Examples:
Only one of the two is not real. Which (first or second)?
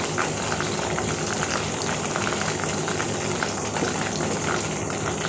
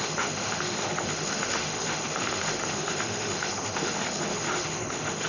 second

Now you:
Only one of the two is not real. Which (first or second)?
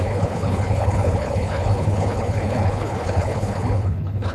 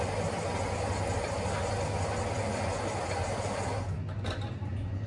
first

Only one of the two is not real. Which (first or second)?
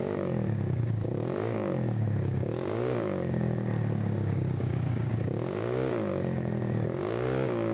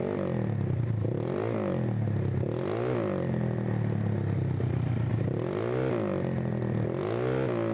first